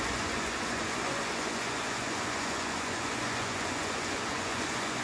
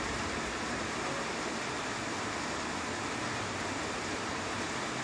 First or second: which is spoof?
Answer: first